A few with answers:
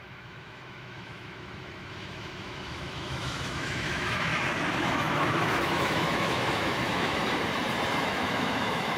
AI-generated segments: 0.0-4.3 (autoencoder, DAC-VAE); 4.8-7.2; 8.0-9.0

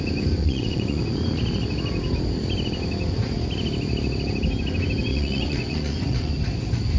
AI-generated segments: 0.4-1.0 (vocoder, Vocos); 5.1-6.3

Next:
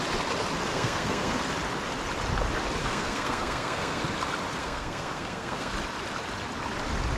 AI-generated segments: 0.7-1.4 (codec, SNAC); 2.8-4.0; 4.6-5.7

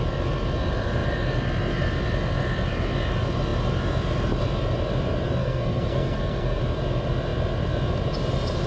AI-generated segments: 5.4-6.6 (codec, SNAC)